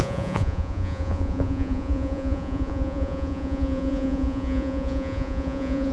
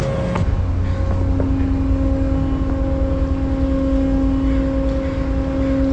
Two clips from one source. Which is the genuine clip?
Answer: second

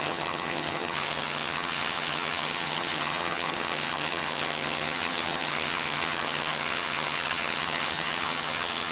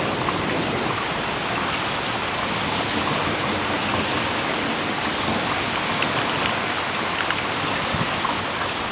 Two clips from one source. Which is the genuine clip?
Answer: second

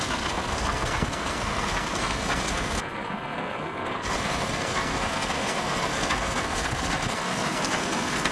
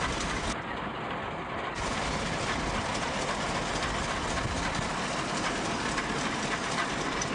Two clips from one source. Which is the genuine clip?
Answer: second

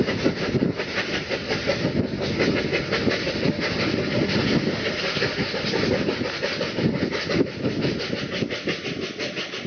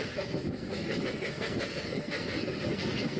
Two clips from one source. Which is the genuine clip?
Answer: first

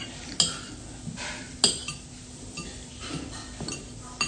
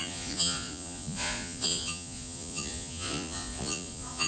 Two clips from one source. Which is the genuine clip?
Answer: first